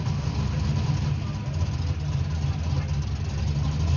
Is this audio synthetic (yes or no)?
no